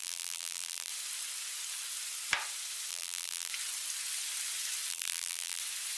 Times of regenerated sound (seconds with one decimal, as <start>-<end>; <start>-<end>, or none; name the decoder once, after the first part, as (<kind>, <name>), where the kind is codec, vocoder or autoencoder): 0.0-0.9 (vocoder, BigVGAN v2); 2.9-3.5; 4.9-5.6